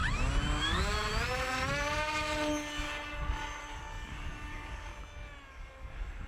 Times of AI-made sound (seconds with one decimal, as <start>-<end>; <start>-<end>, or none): 0.6-1.1; 3.6-4.9; 5.5-6.3